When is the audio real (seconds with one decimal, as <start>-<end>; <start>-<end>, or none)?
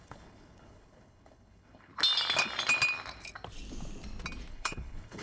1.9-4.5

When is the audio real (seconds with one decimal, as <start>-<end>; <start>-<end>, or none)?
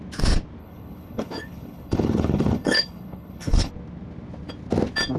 0.0-0.6; 3.7-5.2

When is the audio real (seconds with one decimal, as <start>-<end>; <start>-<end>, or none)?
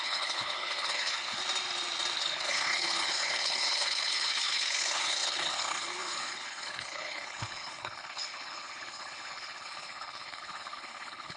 1.4-2.2